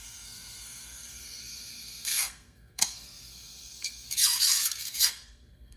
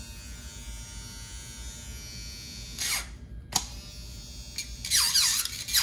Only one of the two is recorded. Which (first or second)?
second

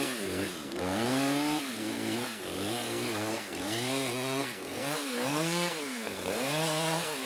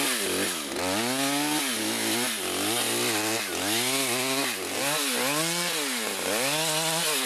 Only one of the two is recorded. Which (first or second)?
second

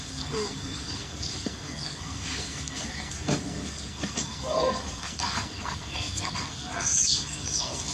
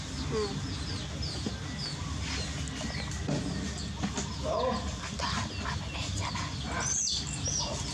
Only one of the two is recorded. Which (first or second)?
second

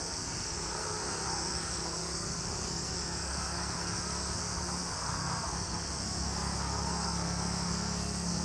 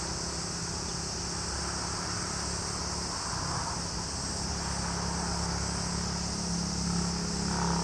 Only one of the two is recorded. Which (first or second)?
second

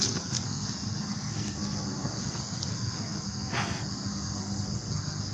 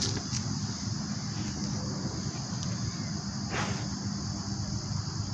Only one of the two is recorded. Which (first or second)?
second